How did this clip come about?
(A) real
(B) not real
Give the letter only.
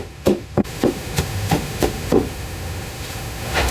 B